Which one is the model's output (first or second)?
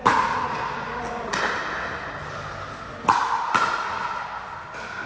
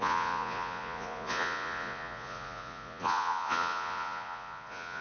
second